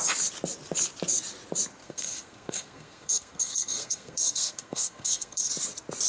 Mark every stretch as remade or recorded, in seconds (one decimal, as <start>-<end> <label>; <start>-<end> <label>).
0.0-1.8 recorded; 1.8-5.5 remade; 5.5-6.1 recorded